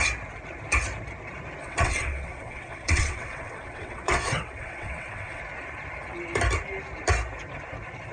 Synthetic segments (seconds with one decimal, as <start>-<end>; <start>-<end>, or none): 1.6-5.4